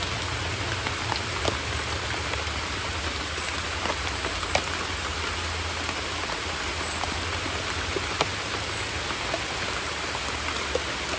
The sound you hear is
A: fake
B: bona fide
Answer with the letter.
B